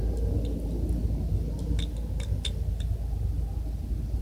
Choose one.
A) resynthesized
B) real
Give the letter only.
B